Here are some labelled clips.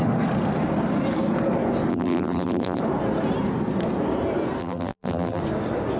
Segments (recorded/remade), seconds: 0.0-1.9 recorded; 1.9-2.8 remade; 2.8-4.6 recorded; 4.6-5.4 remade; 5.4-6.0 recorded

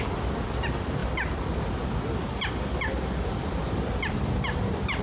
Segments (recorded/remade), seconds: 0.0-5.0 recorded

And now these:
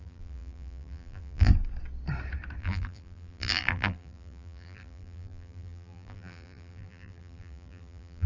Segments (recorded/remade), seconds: 0.0-1.5 remade; 1.5-2.6 recorded; 2.6-8.3 remade